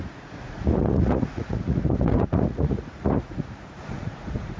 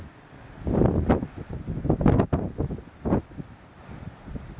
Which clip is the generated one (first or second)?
first